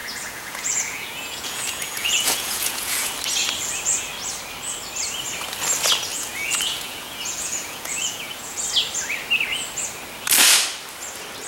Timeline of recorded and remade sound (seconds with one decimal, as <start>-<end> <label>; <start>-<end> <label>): 0.0-3.1 remade; 3.1-6.1 recorded; 6.1-8.6 remade; 8.6-11.5 recorded